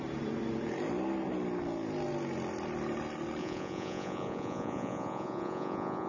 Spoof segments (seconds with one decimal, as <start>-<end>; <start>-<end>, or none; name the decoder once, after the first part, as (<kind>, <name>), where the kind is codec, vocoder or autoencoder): 3.4-6.1 (vocoder, Vocos)